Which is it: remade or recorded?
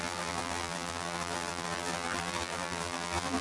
remade